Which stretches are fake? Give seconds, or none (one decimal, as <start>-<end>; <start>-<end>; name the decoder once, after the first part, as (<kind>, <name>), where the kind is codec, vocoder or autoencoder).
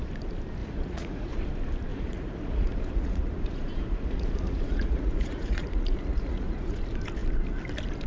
0.6-1.5 (vocoder, Vocos); 1.9-6.8